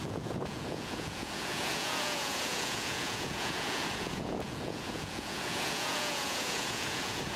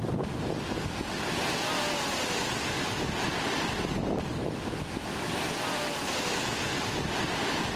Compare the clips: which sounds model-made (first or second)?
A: first